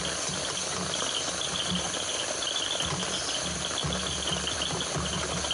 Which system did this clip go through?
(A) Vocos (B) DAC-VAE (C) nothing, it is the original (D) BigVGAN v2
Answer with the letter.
C